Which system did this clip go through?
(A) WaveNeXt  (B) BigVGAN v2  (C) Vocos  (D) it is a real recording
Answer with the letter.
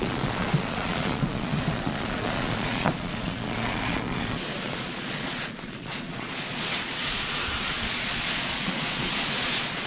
C